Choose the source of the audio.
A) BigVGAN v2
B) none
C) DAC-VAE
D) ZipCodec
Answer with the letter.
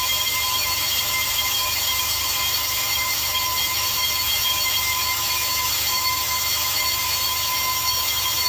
C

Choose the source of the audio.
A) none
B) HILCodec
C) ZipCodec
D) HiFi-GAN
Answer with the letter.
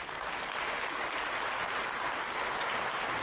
A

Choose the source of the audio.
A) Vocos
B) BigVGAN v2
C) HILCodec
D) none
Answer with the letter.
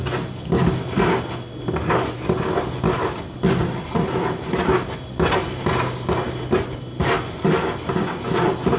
D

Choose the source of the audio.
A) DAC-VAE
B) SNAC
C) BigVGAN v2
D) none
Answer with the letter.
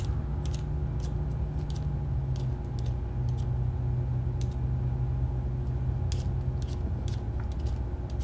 D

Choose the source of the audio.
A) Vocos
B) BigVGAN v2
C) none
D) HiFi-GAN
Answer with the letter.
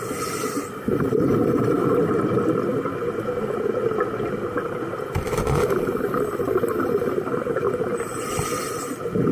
C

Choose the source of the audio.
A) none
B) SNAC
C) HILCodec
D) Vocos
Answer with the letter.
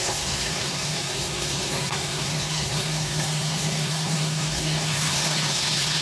B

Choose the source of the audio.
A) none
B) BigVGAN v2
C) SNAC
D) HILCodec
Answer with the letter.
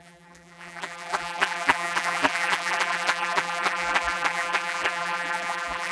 B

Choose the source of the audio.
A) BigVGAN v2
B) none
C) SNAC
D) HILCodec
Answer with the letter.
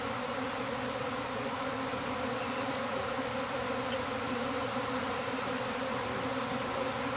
A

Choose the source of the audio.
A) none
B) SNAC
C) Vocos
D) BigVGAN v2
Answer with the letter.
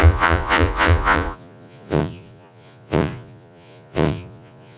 C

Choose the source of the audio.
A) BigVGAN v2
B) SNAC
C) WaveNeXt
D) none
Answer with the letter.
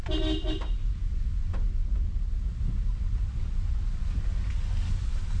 D